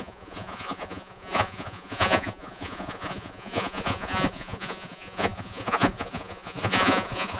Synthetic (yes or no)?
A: yes